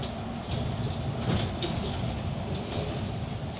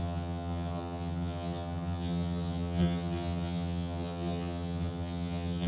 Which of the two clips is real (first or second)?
first